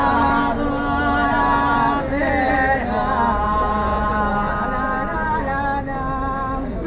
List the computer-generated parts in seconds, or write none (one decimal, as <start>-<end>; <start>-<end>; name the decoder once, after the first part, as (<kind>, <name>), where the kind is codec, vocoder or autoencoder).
none